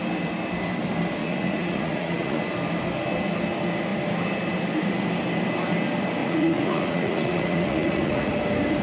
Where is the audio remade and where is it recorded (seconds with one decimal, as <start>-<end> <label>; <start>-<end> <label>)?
0.0-1.2 recorded; 1.2-2.4 remade; 2.4-6.2 recorded; 6.2-8.3 remade; 8.3-8.8 recorded